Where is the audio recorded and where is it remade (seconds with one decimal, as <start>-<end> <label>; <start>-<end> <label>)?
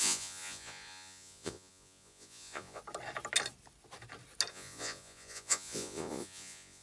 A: 0.0-2.8 remade; 2.8-4.5 recorded; 4.5-6.8 remade